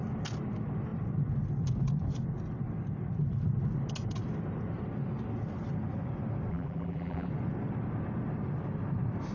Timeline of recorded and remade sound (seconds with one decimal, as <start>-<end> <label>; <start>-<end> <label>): 0.0-6.5 recorded; 6.5-7.3 remade; 7.3-9.3 recorded